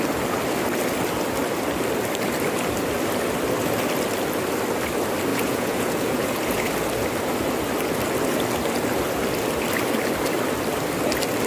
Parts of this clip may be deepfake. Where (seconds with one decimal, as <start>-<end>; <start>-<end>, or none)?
5.3-6.7